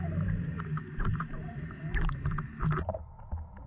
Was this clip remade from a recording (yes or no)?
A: yes